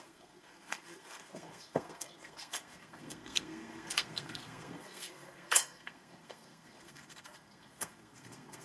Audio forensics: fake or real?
fake